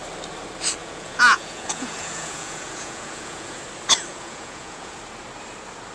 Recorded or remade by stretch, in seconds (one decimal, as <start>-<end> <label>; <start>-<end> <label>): 0.0-0.8 recorded; 0.8-3.6 remade; 3.6-4.1 recorded; 4.1-5.0 remade; 5.0-5.9 recorded